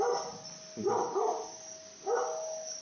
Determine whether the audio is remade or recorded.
recorded